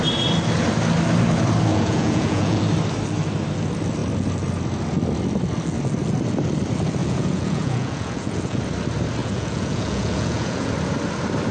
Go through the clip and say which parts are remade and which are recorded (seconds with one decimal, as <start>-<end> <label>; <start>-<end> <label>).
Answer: 0.0-1.7 recorded; 1.7-2.6 remade; 2.6-7.0 recorded; 7.0-8.6 remade; 8.6-9.2 recorded; 9.2-10.7 remade; 10.7-11.5 recorded